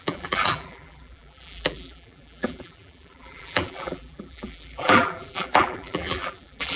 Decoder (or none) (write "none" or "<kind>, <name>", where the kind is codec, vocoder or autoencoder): vocoder, BigVGAN v2